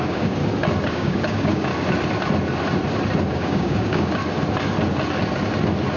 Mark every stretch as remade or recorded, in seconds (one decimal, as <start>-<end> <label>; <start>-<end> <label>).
0.0-0.4 remade; 0.4-0.9 recorded; 0.9-1.7 remade; 1.7-3.3 recorded; 3.3-4.2 remade; 4.2-6.0 recorded